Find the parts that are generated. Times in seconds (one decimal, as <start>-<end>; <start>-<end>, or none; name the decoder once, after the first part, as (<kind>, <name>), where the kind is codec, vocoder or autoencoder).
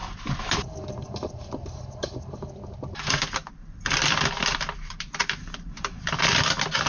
3.5-6.9 (vocoder, BigVGAN v2)